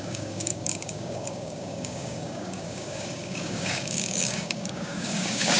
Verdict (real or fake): fake